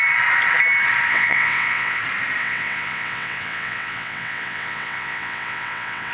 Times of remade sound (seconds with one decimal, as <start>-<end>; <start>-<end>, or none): 1.1-2.0; 2.4-6.1